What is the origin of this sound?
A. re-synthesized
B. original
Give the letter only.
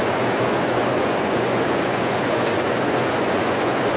A